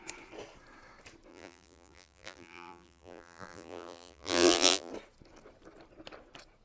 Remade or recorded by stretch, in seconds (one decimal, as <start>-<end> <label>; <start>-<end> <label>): 0.0-1.3 recorded; 1.3-4.9 remade; 4.9-6.6 recorded